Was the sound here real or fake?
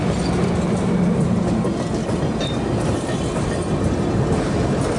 real